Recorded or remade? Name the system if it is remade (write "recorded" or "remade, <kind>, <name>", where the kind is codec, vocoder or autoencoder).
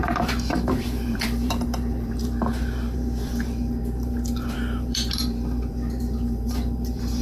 remade, vocoder, BigVGAN v2